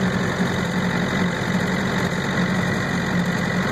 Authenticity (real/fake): real